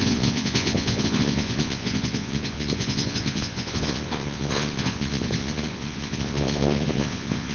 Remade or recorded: remade